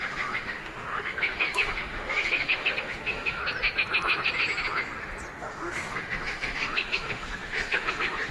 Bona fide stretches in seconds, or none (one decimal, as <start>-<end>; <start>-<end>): 3.4-5.4